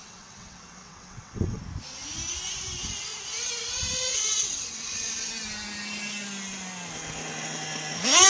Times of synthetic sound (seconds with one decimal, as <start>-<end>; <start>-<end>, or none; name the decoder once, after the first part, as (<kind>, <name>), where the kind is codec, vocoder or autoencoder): 0.0-1.6 (vocoder, WaveNeXt); 4.1-5.3